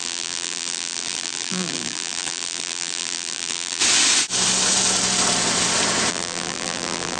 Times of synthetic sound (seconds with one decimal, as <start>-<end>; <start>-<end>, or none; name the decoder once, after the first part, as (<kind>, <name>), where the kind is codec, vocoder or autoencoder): 0.0-3.8 (vocoder, BigVGAN v2); 6.1-7.2